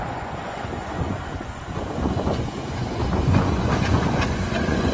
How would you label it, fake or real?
fake